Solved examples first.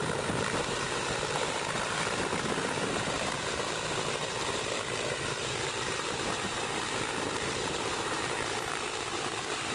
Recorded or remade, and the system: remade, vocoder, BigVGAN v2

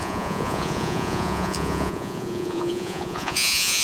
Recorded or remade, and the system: remade, vocoder, Vocos